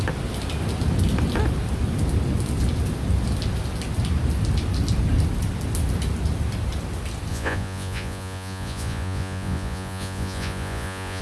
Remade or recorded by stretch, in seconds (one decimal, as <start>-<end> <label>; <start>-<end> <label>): 0.0-7.3 recorded; 7.3-11.2 remade